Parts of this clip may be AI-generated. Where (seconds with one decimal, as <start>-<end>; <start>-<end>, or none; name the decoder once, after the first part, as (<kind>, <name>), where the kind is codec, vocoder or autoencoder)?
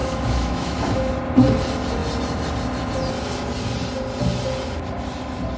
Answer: 0.0-1.1 (autoencoder, DAC-VAE)